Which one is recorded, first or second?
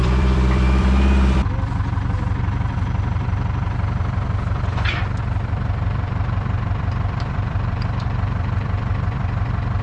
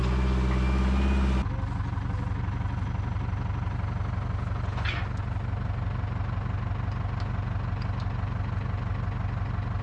second